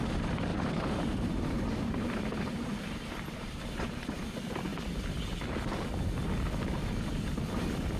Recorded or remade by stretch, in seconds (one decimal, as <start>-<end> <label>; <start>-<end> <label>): 0.0-0.5 recorded; 0.5-4.2 remade; 4.2-8.0 recorded